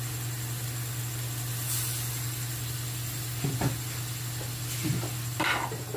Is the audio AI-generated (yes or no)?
no